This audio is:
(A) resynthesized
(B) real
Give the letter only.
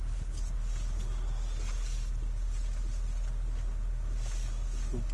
B